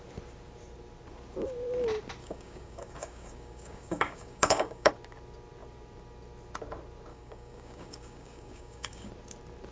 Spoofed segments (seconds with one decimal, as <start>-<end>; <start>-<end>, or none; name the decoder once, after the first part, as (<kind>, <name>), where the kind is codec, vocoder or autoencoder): 2.2-4.9 (codec, DAC); 7.1-9.1